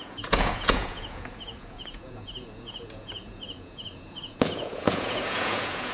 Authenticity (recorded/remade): remade